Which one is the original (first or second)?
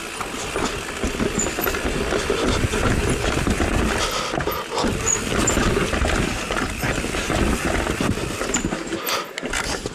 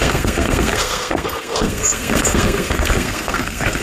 first